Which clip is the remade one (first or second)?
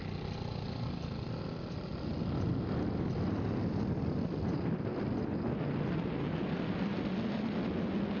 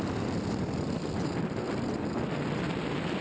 second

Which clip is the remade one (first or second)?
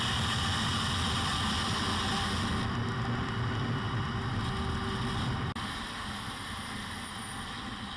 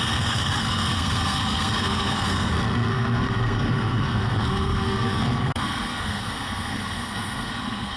second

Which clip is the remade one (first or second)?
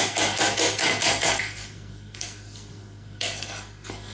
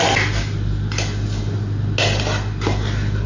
first